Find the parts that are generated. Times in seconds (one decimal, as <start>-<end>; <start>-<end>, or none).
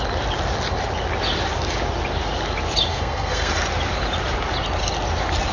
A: 2.9-3.6